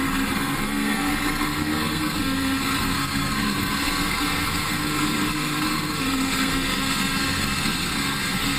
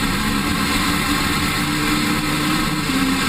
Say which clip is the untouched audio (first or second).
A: second